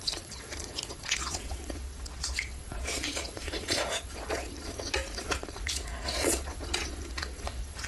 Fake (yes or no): yes